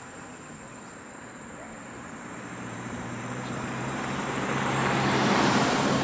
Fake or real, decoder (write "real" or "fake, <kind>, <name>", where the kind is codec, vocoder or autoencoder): fake, vocoder, BigVGAN v2